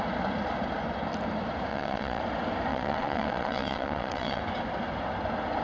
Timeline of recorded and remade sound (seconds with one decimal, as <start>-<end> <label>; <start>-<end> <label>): 0.0-1.7 recorded; 1.7-2.2 remade; 2.2-2.7 recorded; 2.7-4.4 remade; 4.4-5.6 recorded